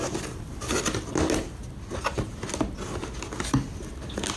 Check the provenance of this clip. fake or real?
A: real